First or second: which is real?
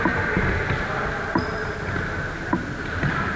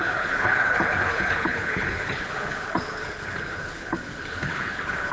first